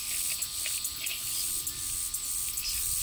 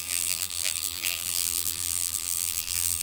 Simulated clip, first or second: second